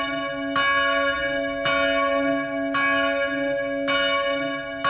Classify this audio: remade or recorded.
recorded